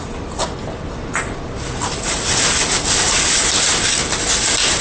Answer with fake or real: real